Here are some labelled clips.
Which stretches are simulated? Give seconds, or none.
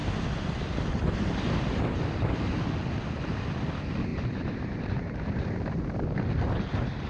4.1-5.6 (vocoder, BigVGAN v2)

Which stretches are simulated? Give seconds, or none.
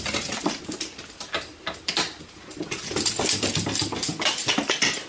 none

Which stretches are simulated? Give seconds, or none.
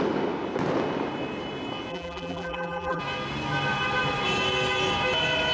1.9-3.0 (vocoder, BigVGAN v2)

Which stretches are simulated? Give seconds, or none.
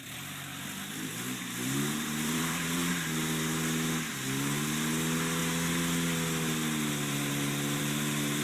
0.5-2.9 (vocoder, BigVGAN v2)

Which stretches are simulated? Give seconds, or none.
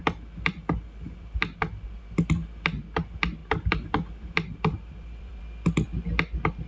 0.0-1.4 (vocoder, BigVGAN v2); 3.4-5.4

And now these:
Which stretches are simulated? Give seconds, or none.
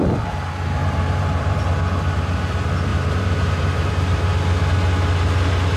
0.8-1.6 (vocoder, BigVGAN v2); 2.9-3.9